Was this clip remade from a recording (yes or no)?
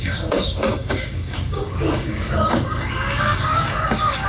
yes